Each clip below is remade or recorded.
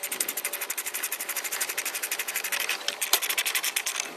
recorded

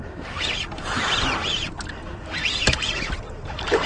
recorded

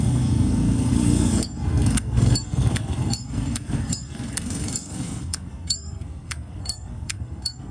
remade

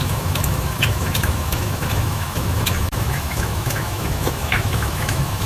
remade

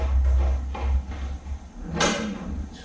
recorded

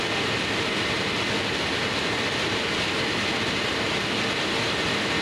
recorded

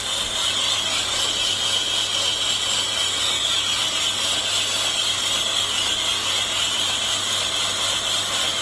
recorded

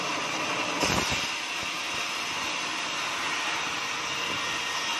recorded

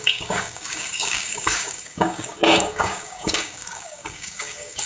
remade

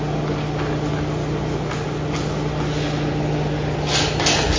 recorded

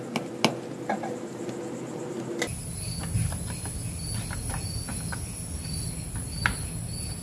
recorded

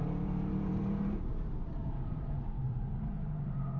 remade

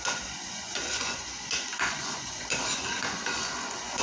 remade